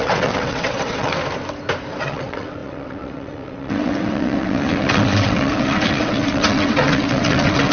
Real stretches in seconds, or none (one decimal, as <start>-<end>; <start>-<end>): 1.2-1.9